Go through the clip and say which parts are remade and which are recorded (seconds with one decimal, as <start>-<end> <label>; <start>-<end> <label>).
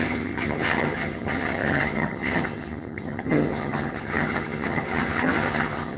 0.0-6.0 remade